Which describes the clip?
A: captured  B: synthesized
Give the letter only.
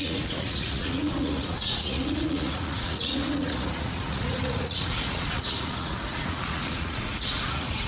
B